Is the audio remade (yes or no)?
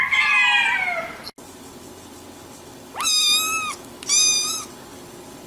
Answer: no